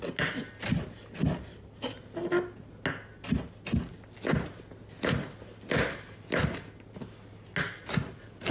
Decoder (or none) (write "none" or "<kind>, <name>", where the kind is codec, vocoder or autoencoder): none